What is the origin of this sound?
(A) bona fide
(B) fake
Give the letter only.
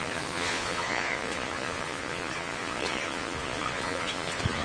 B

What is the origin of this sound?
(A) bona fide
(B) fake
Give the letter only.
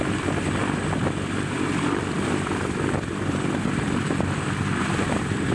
B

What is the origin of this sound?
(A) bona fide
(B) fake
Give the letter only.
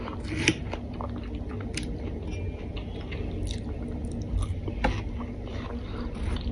A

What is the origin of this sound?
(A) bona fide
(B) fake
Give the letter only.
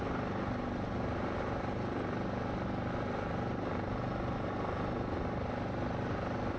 A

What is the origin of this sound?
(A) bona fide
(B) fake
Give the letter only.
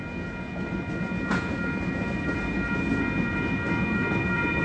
A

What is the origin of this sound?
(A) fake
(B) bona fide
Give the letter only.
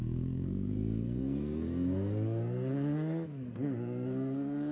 A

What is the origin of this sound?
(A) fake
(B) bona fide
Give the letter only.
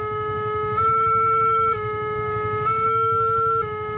A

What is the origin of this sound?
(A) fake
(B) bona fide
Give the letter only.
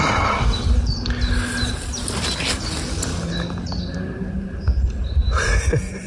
B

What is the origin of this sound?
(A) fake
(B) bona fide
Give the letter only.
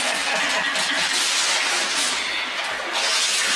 B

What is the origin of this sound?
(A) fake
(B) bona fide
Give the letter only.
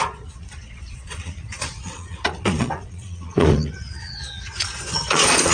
A